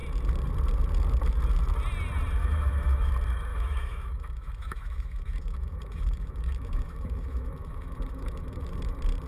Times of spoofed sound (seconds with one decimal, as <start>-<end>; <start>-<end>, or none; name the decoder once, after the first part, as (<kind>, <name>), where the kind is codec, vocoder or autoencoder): 2.4-3.1 (autoencoder, DAC-VAE); 3.5-8.6